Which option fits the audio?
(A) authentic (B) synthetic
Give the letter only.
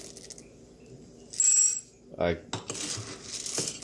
A